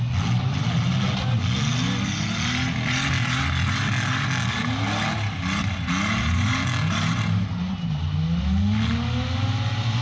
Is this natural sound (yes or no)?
yes